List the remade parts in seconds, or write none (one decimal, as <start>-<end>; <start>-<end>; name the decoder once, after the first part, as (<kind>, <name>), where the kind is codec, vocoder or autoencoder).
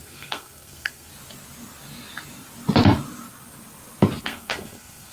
0.0-1.1 (codec, SNAC); 4.2-5.1